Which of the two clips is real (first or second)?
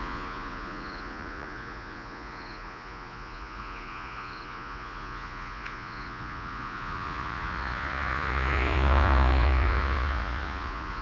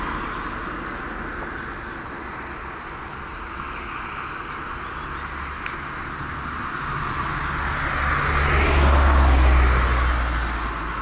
second